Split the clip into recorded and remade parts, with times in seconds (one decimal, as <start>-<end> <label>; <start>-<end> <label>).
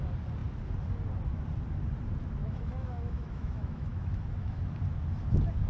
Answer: 0.0-2.4 recorded; 2.4-4.6 remade; 4.6-5.7 recorded